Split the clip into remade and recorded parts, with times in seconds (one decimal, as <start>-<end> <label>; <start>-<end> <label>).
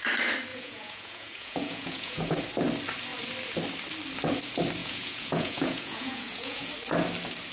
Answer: 0.0-0.5 recorded; 0.5-2.4 remade; 2.4-4.8 recorded; 4.8-6.7 remade; 6.7-7.5 recorded